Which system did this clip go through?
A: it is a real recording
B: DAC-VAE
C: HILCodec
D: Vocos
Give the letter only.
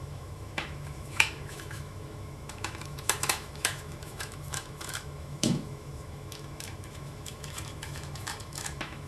B